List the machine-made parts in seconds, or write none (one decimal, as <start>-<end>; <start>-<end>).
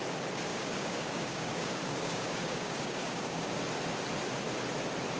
0.5-3.6